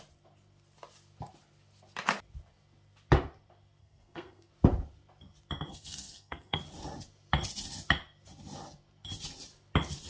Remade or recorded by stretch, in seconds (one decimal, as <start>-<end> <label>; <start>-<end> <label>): 0.0-3.8 recorded; 3.8-4.5 remade; 4.5-5.7 recorded; 5.7-6.6 remade; 6.6-10.1 recorded